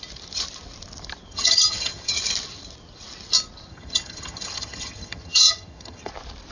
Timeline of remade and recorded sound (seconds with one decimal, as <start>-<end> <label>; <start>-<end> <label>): 0.0-1.3 recorded; 1.3-2.1 remade; 2.1-3.7 recorded; 3.7-6.1 remade; 6.1-6.5 recorded